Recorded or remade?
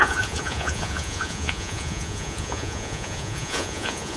remade